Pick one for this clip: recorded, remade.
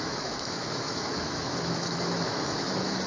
remade